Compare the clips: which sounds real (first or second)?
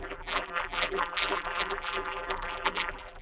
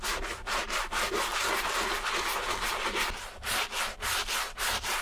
second